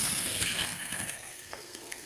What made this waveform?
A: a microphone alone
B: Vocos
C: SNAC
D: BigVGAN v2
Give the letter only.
C